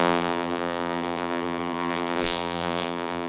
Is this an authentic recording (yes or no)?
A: no